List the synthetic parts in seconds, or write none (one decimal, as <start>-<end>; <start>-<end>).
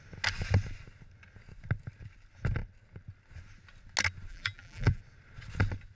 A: 4.3-5.0